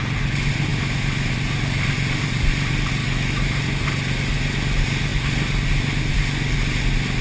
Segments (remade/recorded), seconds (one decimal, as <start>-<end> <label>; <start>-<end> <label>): 0.0-0.7 recorded; 0.7-1.3 remade; 1.3-3.0 recorded; 3.0-3.6 remade; 3.6-7.2 recorded